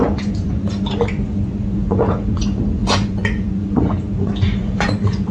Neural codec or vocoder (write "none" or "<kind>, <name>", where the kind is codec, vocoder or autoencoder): vocoder, Vocos